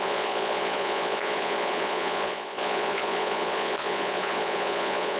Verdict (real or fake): fake